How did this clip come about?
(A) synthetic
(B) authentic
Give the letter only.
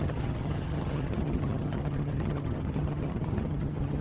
A